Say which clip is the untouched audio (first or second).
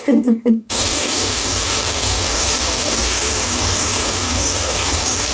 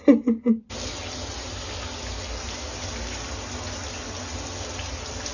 second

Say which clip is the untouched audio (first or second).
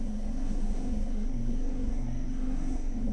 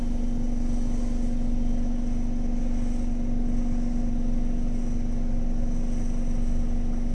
second